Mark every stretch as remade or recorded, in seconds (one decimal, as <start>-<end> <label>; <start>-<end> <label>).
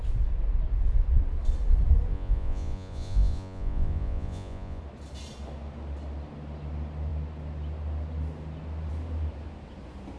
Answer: 0.0-2.1 recorded; 2.1-4.8 remade; 4.8-10.2 recorded